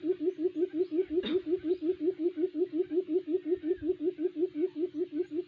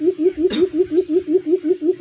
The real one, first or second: second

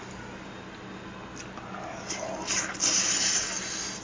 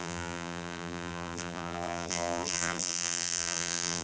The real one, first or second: first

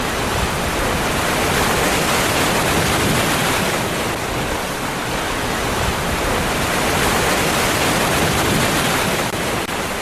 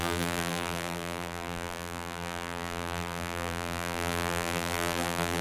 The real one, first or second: first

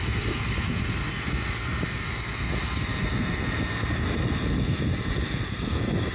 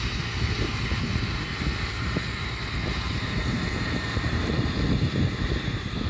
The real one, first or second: first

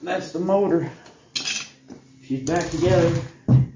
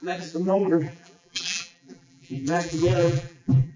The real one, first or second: first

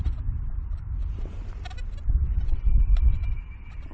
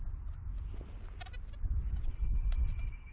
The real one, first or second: second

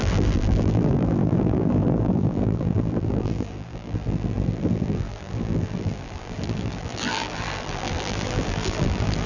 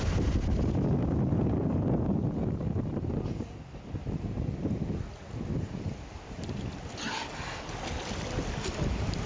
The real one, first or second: second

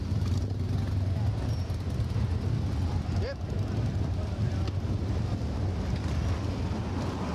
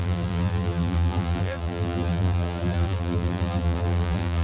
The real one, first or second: first